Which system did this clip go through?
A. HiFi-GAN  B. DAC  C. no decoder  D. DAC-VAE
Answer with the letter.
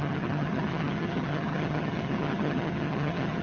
A